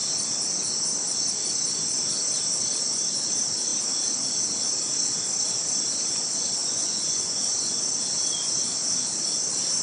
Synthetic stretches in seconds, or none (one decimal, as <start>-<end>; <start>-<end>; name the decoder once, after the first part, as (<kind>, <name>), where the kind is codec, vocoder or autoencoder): 6.6-7.8 (vocoder, Vocos)